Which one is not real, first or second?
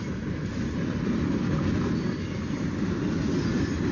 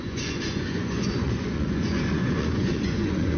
second